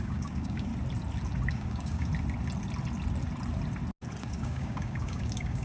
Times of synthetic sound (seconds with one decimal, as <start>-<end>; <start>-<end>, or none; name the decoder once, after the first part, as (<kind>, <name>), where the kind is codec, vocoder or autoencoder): 0.0-0.7 (codec, DAC); 1.5-2.1; 4.2-5.6